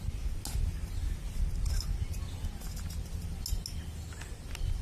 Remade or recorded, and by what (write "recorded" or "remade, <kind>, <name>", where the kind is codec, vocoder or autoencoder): recorded